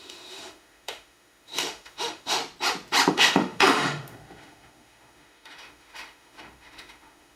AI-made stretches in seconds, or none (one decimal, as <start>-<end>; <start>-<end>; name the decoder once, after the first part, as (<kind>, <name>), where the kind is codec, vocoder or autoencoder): 0.0-2.4 (autoencoder, DAC-VAE); 3.1-7.4